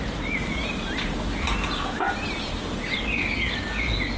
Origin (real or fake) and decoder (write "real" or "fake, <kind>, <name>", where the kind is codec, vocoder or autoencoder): real